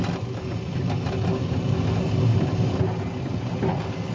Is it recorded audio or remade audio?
recorded